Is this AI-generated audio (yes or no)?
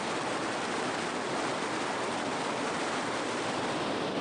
no